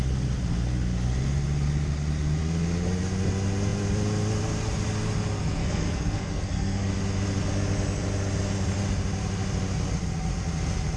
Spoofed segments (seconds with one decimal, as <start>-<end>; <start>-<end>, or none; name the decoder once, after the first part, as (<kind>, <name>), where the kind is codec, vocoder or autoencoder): 5.6-6.9 (codec, SNAC)